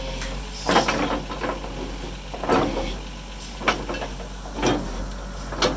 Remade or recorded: recorded